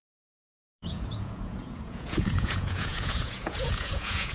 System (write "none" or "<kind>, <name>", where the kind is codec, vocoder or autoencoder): vocoder, Vocos